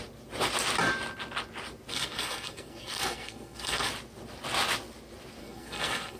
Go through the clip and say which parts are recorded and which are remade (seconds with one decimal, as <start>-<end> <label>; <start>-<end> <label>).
0.0-1.9 recorded; 1.9-3.9 remade; 3.9-5.4 recorded; 5.4-6.2 remade